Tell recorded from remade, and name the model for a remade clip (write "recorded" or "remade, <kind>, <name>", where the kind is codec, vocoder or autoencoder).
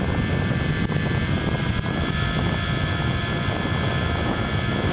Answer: recorded